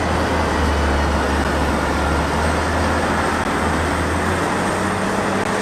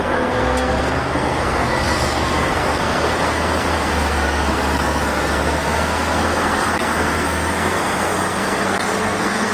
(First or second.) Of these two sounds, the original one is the first